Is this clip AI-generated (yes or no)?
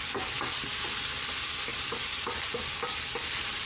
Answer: no